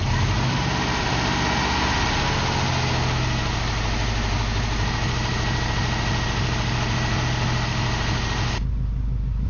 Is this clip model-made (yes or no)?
no